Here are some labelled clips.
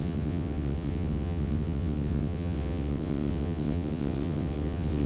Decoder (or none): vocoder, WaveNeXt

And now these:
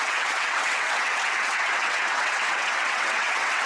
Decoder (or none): vocoder, WaveNeXt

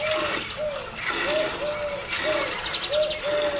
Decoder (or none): none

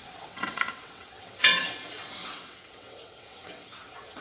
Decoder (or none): vocoder, WaveNeXt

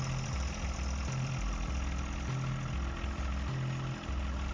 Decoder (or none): none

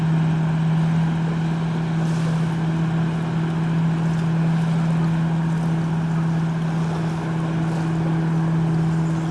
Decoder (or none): none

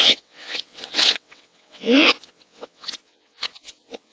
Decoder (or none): vocoder, WaveNeXt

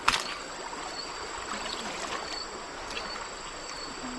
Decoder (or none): none